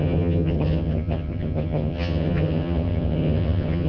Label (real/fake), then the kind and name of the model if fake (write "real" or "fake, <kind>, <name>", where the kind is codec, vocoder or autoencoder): fake, vocoder, HiFi-GAN